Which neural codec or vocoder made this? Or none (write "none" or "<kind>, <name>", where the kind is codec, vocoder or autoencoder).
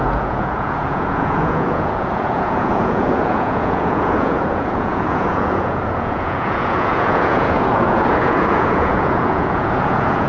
vocoder, Vocos